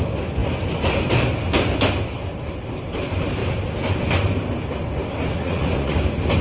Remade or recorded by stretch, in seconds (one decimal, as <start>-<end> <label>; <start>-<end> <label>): 0.0-5.3 recorded; 5.3-6.0 remade; 6.0-6.4 recorded